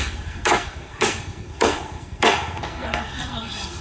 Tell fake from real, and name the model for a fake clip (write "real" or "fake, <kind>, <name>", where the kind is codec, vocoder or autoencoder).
fake, codec, SNAC